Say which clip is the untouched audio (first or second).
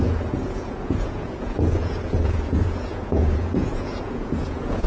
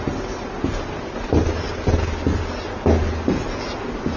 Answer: second